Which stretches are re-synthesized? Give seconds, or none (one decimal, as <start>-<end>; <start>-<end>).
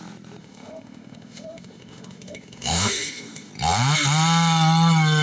0.4-3.5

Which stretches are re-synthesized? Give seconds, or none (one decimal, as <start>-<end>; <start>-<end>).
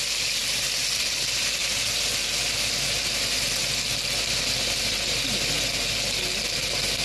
none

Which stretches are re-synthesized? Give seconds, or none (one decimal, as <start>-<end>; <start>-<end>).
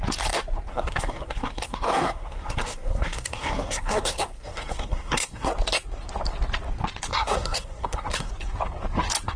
0.7-5.5; 7.1-8.3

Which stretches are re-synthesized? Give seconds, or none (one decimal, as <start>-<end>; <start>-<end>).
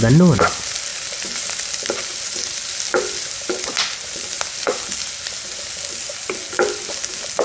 none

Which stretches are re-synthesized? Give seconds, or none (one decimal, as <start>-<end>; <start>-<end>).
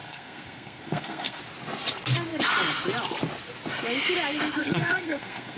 0.0-1.4; 4.6-5.6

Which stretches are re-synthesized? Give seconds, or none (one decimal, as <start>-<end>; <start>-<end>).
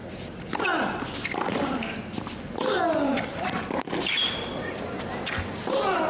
none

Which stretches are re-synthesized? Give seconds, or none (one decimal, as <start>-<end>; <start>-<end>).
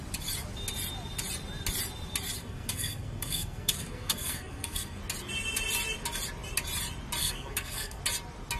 2.4-5.0; 7.2-8.0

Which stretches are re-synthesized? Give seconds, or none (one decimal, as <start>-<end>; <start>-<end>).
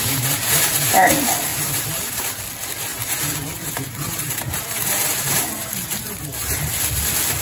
0.0-1.1; 1.5-2.4; 2.9-6.8